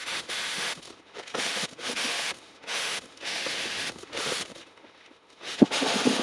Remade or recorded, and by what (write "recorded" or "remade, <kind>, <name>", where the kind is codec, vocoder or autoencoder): remade, autoencoder, DAC-VAE